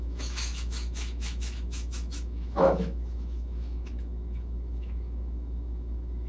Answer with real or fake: fake